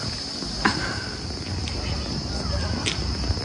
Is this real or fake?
real